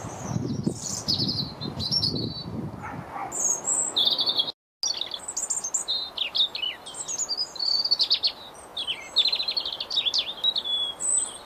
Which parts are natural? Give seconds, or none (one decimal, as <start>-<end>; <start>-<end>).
0.0-11.5